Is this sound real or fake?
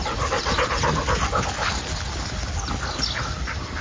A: real